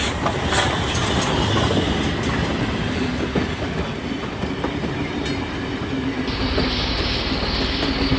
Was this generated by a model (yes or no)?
no